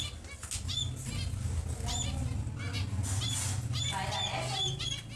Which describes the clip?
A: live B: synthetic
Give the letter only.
A